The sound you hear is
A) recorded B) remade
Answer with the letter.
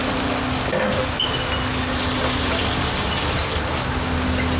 A